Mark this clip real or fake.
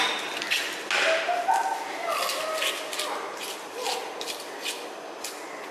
real